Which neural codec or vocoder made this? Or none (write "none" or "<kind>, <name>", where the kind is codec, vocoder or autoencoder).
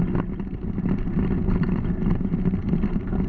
none